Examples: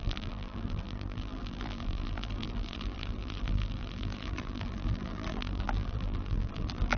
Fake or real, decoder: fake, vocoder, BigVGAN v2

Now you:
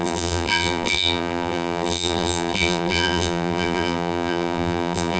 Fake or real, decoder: fake, vocoder, BigVGAN v2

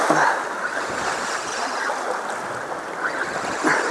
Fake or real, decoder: real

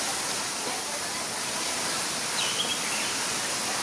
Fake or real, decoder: real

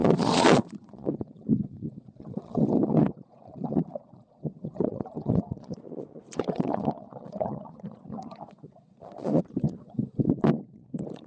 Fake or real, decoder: fake, vocoder, Vocos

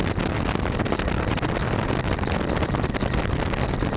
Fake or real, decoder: real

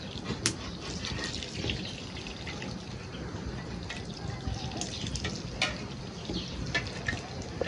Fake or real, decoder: real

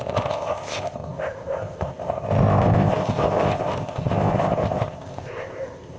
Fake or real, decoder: fake, codec, ZipCodec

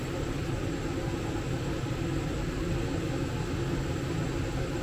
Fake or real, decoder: real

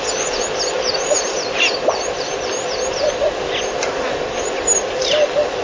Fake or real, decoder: real